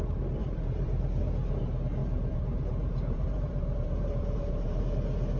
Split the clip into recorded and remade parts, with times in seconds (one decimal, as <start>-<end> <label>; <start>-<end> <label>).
0.0-0.4 recorded; 0.4-1.0 remade; 1.0-2.0 recorded; 2.0-4.8 remade; 4.8-5.4 recorded